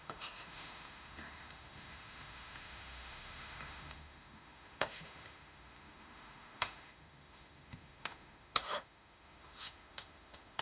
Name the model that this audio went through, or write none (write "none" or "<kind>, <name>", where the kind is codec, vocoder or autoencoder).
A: autoencoder, DAC-VAE